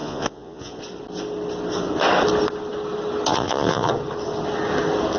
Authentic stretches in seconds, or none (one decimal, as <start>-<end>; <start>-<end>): 0.8-3.3; 3.9-5.2